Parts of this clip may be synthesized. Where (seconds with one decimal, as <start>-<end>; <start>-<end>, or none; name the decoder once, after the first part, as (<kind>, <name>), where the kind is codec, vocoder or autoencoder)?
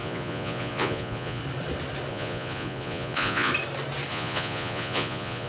0.0-1.4 (vocoder, Vocos); 2.1-3.5; 4.1-5.5